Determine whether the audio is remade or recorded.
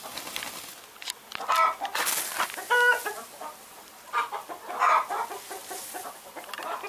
recorded